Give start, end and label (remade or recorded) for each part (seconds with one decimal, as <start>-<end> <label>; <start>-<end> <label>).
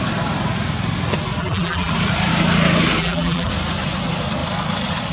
0.0-1.4 recorded; 1.4-1.9 remade; 1.9-3.0 recorded; 3.0-3.5 remade; 3.5-5.1 recorded